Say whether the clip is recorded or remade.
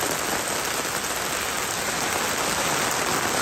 recorded